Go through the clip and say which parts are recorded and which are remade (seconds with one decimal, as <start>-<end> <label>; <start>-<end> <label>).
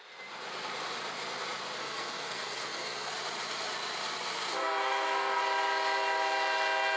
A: 0.0-1.8 recorded; 1.8-3.1 remade; 3.1-4.6 recorded; 4.6-5.4 remade; 5.4-7.0 recorded